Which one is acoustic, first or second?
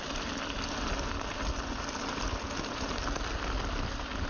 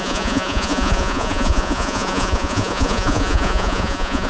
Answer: first